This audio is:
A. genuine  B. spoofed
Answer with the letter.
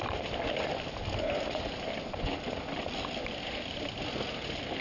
A